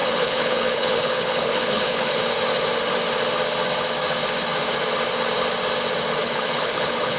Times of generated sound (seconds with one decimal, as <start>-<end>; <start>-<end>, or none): 0.0-2.2; 6.2-7.2